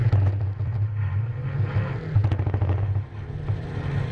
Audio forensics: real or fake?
real